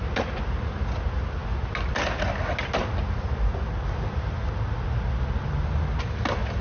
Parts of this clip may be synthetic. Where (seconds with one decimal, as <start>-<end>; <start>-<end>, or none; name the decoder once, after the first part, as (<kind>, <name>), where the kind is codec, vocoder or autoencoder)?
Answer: none